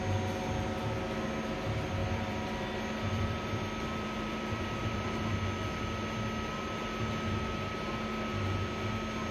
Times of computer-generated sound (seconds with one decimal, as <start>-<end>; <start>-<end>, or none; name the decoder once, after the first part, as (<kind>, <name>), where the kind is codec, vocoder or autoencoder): 2.0-5.3 (vocoder, BigVGAN v2)